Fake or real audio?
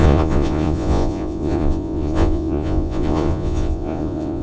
fake